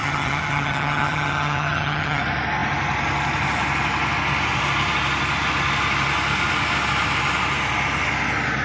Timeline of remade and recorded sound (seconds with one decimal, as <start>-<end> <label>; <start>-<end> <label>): 0.0-2.2 remade; 2.2-8.6 recorded